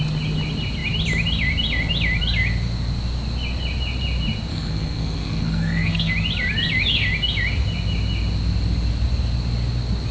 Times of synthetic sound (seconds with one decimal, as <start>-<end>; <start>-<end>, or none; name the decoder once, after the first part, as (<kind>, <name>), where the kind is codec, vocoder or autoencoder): 4.5-6.1 (codec, SNAC)